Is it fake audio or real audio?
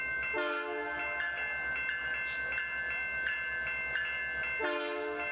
real